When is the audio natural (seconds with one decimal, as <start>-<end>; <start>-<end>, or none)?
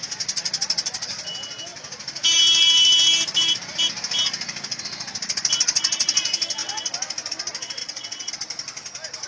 0.0-7.8; 8.3-9.3